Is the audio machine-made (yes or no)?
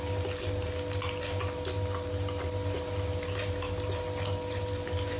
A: no